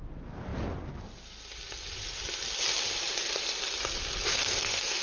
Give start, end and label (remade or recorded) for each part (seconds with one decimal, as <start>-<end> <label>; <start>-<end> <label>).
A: 0.0-4.3 recorded; 4.3-5.0 remade

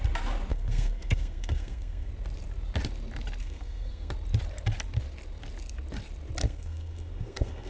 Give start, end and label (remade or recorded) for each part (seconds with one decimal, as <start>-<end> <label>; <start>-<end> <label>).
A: 0.0-0.5 recorded; 0.5-2.1 remade; 2.1-3.4 recorded; 3.4-4.1 remade; 4.1-6.4 recorded; 6.4-7.7 remade

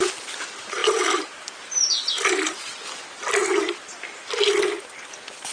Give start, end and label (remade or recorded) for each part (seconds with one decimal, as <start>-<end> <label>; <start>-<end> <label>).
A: 0.0-5.5 recorded

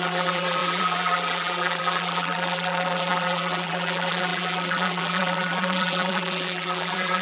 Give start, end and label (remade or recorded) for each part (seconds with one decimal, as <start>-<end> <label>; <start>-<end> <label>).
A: 0.0-7.2 remade

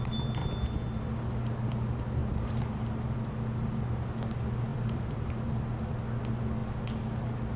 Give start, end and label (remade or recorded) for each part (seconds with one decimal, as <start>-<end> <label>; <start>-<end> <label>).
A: 0.0-2.2 recorded; 2.2-2.9 remade; 2.9-4.7 recorded; 4.7-5.6 remade; 5.6-7.6 recorded